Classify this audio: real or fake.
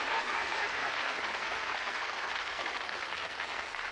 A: fake